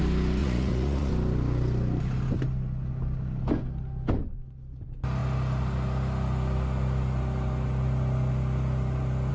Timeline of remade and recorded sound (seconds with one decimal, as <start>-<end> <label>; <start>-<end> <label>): 0.0-0.4 recorded; 0.4-1.1 remade; 1.1-9.3 recorded